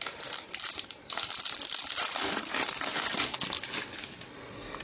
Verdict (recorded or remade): recorded